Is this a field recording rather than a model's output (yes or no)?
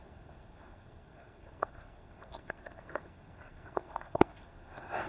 no